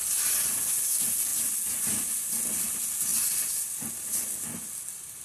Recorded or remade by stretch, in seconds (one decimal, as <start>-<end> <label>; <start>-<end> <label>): 0.0-5.2 recorded